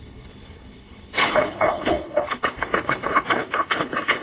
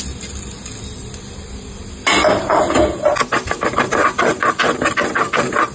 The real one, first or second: second